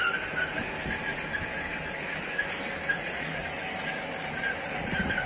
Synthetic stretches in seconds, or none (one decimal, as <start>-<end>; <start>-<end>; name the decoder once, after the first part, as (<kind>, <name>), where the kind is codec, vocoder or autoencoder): 2.9-3.4 (vocoder, Vocos); 4.4-5.3